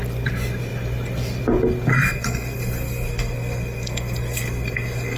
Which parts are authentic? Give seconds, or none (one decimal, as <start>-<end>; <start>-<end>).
0.0-1.9